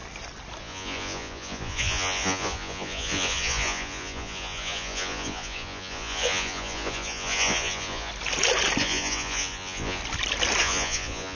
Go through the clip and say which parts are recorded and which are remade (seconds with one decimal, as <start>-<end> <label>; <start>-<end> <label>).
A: 0.0-0.6 recorded; 0.6-8.1 remade; 8.1-8.8 recorded; 8.8-10.0 remade; 10.0-10.6 recorded; 10.6-11.4 remade